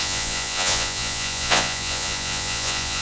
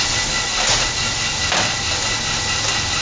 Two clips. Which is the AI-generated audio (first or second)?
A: first